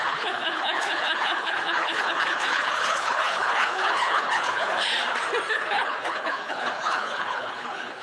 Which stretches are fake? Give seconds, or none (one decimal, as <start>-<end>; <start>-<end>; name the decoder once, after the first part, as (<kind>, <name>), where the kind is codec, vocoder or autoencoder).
0.0-4.9 (codec, HILCodec); 5.5-8.0